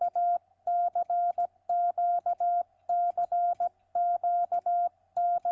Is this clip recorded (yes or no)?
yes